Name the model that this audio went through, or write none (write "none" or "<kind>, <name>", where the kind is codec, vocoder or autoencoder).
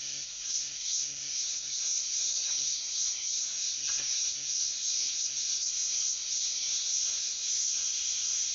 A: codec, SNAC